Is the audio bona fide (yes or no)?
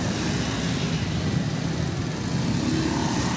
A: yes